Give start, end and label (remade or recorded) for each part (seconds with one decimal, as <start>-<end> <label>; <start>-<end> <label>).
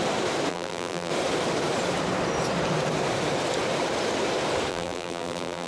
0.0-0.5 recorded; 0.5-1.1 remade; 1.1-4.7 recorded; 4.7-5.7 remade